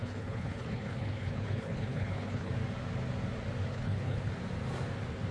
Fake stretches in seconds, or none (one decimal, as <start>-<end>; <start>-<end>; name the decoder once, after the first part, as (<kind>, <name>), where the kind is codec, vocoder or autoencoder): 0.0-2.5 (codec, HILCodec); 3.7-4.3